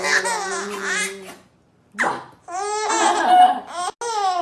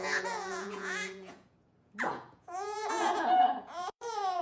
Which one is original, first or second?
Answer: first